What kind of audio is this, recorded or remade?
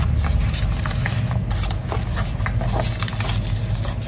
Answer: recorded